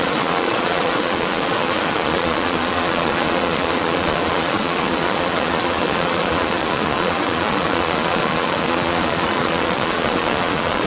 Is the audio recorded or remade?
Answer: remade